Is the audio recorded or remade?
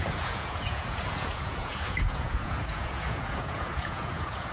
remade